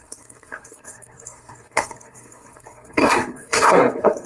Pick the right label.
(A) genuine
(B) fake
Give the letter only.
B